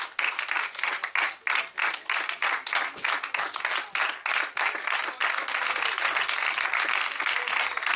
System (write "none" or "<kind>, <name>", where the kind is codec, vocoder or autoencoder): none